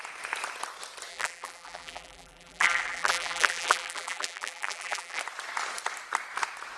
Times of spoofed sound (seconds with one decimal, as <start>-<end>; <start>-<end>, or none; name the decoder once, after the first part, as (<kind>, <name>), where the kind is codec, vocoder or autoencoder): 1.1-5.2 (vocoder, BigVGAN v2)